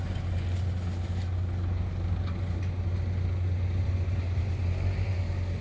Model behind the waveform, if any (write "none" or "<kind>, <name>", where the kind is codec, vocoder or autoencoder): none